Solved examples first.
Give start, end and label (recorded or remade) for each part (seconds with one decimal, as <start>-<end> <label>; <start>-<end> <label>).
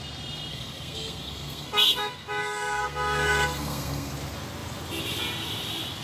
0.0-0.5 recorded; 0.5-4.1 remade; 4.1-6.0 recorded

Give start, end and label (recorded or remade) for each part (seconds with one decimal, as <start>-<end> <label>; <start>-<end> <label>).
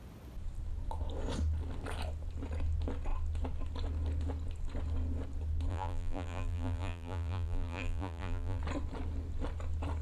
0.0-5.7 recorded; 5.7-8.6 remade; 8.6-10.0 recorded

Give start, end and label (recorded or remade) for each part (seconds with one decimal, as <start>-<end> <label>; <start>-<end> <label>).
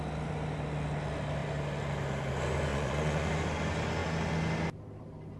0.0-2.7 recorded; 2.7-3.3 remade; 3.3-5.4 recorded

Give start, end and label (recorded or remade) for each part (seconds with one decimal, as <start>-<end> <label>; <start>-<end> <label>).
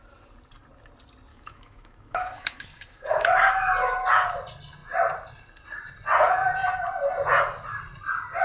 0.0-1.3 recorded; 1.3-3.5 remade; 3.5-8.4 recorded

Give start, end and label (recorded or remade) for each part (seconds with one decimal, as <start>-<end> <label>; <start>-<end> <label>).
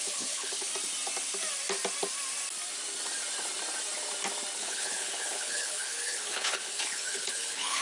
0.0-0.7 remade; 0.7-4.6 recorded; 4.6-7.8 remade